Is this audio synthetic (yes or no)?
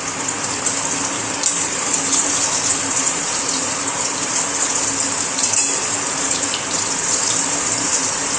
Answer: yes